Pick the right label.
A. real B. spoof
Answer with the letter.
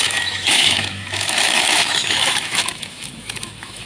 B